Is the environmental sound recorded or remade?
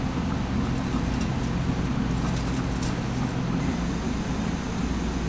recorded